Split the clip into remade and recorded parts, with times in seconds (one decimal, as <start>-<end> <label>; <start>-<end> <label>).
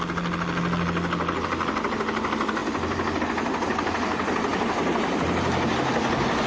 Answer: 0.0-6.5 recorded